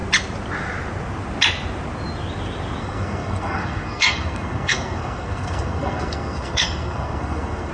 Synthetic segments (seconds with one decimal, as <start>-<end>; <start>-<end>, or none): 2.8-7.7